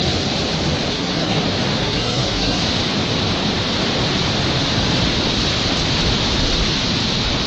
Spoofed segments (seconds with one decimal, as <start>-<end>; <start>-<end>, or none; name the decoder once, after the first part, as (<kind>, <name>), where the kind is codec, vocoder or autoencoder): 0.9-1.4 (codec, SNAC); 1.8-2.6